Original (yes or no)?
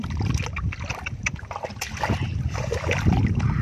yes